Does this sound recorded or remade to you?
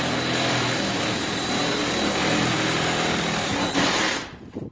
remade